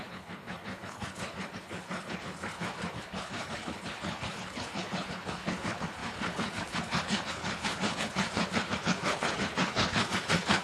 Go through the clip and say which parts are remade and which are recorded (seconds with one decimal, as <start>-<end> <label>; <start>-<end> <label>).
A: 0.0-10.6 remade